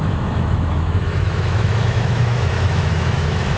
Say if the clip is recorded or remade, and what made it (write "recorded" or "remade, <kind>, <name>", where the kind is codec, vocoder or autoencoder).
remade, autoencoder, DAC-VAE